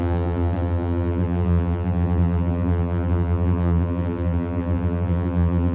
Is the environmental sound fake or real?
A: fake